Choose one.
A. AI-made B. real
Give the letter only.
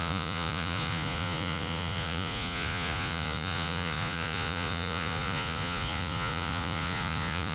A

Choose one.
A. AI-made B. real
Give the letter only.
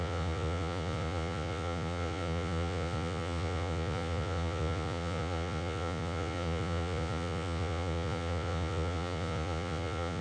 A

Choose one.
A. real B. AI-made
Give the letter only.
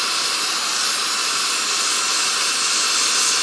A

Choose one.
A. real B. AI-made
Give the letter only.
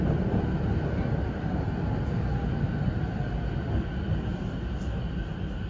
A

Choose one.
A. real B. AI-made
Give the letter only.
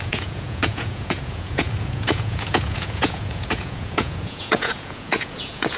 B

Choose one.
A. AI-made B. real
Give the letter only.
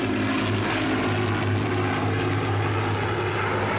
B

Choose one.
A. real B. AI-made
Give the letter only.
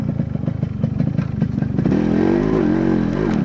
A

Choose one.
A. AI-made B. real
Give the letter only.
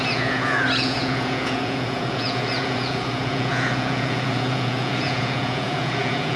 A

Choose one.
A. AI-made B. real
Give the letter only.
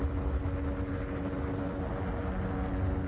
B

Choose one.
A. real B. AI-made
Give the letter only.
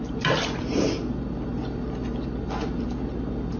A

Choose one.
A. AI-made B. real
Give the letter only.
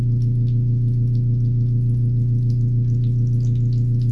B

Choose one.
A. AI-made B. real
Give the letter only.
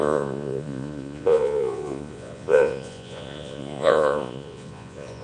A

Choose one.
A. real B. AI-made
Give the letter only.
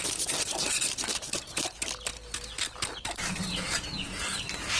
A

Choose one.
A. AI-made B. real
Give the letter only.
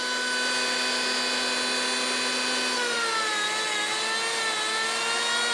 B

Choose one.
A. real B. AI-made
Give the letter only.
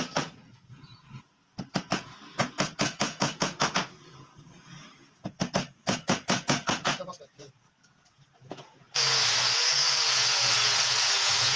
B